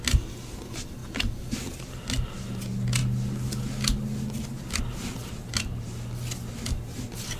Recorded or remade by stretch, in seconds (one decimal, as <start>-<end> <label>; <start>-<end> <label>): 0.0-7.4 recorded